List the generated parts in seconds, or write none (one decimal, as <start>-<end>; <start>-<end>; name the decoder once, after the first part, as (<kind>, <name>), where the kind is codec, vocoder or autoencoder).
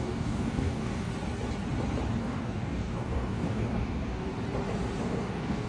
0.0-1.1 (codec, DAC); 2.2-4.3; 5.0-5.7